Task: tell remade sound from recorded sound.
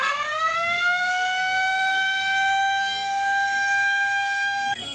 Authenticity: remade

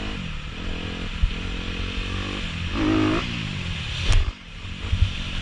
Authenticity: recorded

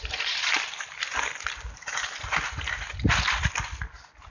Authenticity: recorded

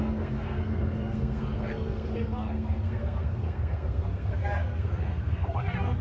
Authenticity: remade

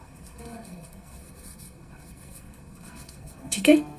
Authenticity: remade